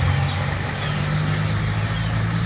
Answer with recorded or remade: recorded